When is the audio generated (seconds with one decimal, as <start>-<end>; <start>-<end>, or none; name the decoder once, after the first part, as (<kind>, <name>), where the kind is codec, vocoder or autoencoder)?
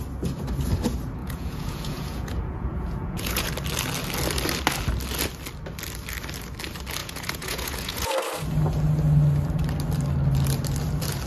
1.2-3.5 (vocoder, Vocos); 7.0-8.1